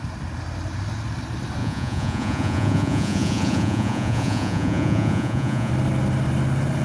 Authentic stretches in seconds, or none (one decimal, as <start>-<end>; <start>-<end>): 0.0-1.6; 5.7-6.8

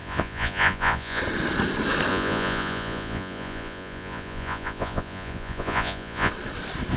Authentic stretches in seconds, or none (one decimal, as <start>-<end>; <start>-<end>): 1.2-2.1; 6.3-7.0

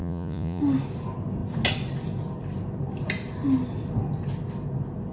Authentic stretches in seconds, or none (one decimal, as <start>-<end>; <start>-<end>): 0.6-5.1